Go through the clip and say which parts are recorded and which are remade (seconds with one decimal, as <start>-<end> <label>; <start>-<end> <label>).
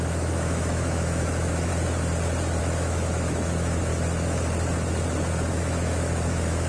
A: 0.0-1.7 remade; 1.7-2.6 recorded; 2.6-3.9 remade; 3.9-5.5 recorded; 5.5-6.7 remade